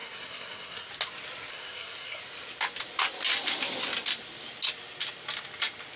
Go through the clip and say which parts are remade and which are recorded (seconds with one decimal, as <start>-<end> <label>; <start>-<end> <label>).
0.0-0.9 remade; 0.9-1.5 recorded; 1.5-2.2 remade; 2.2-6.0 recorded